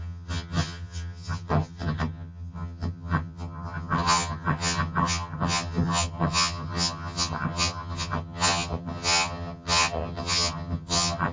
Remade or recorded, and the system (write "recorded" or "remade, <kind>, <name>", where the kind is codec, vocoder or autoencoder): remade, vocoder, HiFi-GAN